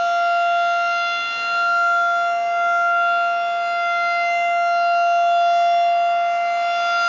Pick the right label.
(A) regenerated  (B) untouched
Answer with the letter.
B